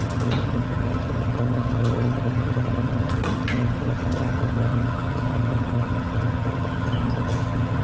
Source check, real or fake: fake